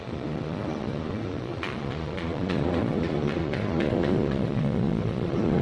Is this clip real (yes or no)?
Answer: no